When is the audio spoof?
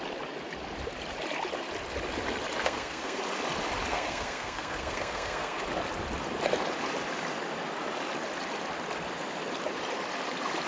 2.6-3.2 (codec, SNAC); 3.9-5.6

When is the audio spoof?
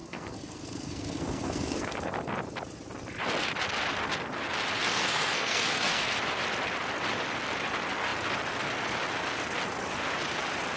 0.0-2.1 (codec, SNAC); 4.8-6.2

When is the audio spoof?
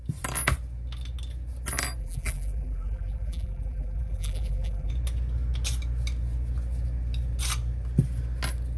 2.0-4.9 (vocoder, BigVGAN v2)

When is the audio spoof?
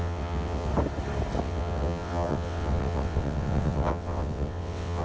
0.0-0.7 (vocoder, WaveNeXt); 1.4-5.0